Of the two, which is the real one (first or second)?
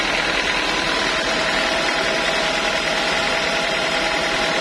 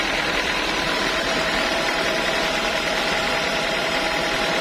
first